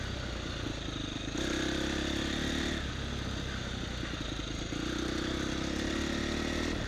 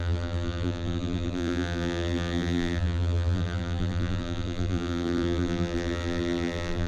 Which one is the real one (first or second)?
first